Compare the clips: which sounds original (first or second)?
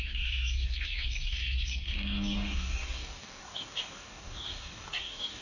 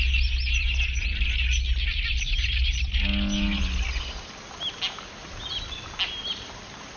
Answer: second